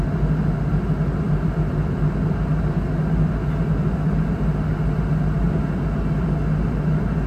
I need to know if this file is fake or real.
real